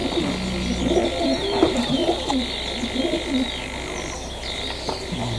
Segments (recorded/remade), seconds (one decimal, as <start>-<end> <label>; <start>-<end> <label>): 0.0-1.2 recorded; 1.2-2.0 remade; 2.0-5.4 recorded